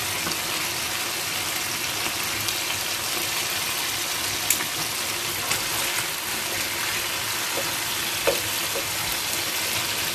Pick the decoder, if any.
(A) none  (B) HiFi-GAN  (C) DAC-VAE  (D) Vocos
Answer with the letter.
A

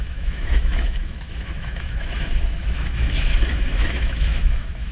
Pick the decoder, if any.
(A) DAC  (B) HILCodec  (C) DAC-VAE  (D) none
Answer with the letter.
C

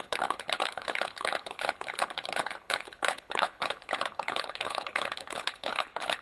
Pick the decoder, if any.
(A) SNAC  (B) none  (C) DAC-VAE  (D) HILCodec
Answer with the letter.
D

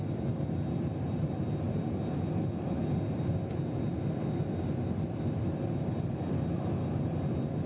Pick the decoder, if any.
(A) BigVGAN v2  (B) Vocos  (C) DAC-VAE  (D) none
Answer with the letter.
D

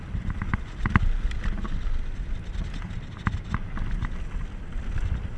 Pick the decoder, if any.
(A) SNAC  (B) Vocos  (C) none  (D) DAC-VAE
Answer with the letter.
C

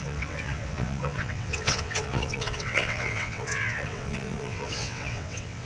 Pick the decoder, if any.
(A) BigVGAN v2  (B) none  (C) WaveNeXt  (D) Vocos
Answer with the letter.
C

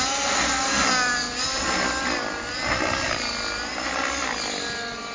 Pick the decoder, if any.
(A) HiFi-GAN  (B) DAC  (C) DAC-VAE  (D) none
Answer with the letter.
D